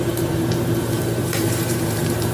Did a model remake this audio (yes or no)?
yes